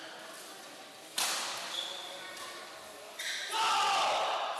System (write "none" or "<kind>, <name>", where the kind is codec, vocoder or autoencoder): none